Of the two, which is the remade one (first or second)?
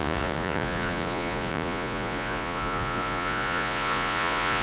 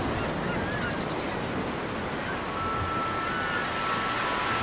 first